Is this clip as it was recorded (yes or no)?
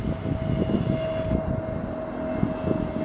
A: yes